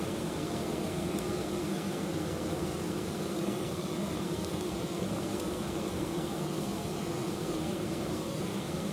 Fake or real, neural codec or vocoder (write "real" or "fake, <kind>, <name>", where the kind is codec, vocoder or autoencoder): fake, codec, SNAC